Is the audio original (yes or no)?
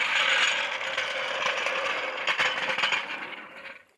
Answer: yes